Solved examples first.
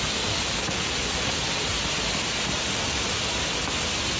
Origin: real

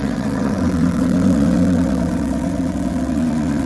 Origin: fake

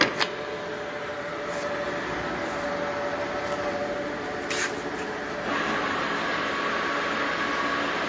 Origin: real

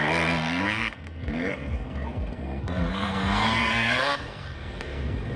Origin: fake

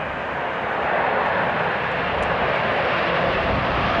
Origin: fake